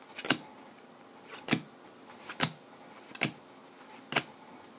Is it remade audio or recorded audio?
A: recorded